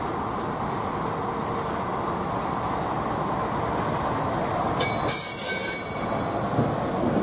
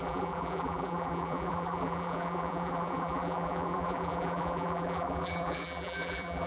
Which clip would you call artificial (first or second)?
second